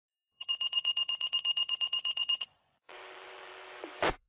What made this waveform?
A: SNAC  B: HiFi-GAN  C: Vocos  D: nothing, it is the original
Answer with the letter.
C